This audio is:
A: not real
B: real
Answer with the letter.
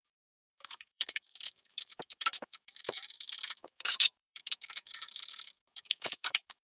A